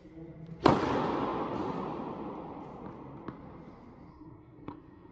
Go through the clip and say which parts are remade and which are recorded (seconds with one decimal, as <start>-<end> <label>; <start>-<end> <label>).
0.0-4.1 recorded; 4.1-5.1 remade